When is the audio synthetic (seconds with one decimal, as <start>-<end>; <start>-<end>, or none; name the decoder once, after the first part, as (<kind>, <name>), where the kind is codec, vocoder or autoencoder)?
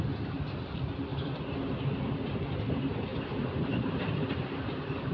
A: 3.1-5.1 (vocoder, BigVGAN v2)